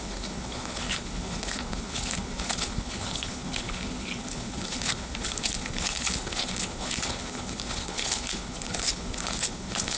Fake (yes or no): yes